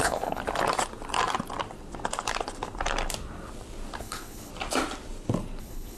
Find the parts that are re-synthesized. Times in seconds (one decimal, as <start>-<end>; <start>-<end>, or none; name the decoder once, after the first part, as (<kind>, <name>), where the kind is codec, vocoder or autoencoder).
0.0-0.4 (codec, HILCodec); 4.0-4.5; 5.6-6.0